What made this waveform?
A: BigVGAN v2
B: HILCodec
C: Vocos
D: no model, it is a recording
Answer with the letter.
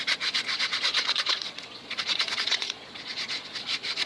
C